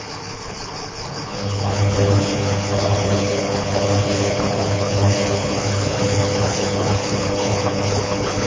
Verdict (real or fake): fake